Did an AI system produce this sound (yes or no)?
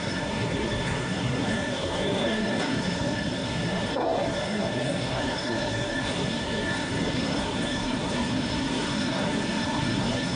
yes